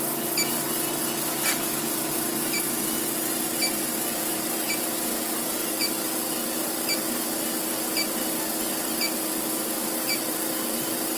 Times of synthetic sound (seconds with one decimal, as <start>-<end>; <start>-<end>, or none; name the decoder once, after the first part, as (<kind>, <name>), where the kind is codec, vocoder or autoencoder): none